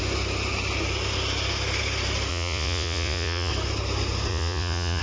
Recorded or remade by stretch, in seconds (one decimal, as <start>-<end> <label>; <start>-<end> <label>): 0.0-2.3 recorded; 2.3-3.5 remade; 3.5-4.3 recorded; 4.3-5.0 remade